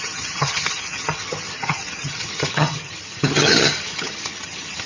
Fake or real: fake